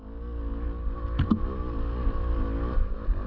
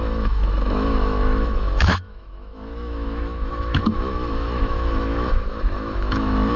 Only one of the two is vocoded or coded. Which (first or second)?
second